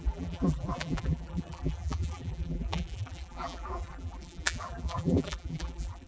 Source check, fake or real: fake